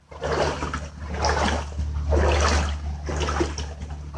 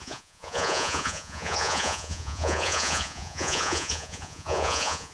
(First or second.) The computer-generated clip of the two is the second